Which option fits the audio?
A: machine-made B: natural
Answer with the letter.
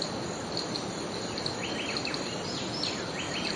B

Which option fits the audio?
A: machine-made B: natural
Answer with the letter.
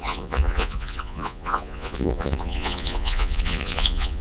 A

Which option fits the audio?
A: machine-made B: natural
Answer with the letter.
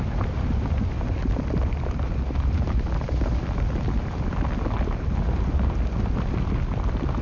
B